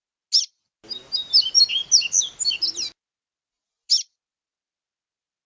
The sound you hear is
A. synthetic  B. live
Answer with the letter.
B